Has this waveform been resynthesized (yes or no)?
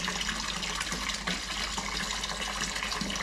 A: no